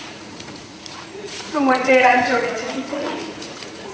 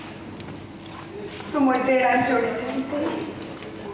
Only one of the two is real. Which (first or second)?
second